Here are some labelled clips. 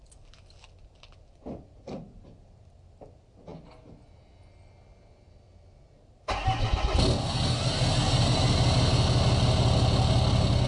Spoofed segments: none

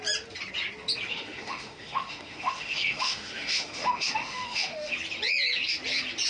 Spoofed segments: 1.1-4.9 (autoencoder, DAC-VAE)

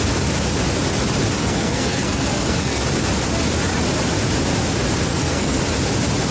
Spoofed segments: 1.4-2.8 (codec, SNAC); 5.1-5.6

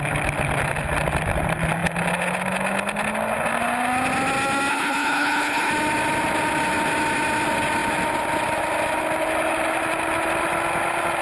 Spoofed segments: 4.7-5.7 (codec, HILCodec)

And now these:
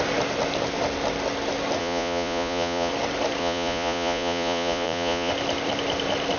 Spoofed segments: 1.8-2.9 (vocoder, Vocos); 3.4-5.3